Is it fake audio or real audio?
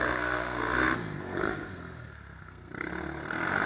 fake